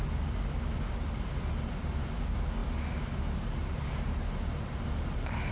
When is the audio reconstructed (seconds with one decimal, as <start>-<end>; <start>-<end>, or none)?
none